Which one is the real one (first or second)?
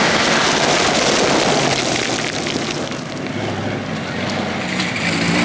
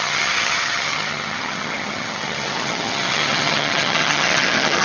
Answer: first